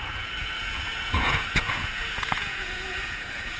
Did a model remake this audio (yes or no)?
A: yes